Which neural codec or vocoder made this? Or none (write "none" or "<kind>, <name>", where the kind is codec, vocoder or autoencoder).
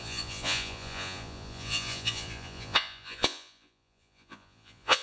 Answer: vocoder, Vocos